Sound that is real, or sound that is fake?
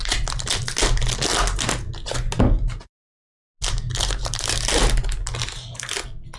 real